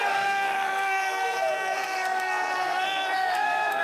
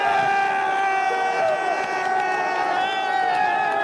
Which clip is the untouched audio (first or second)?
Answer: second